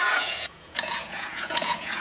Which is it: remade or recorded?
remade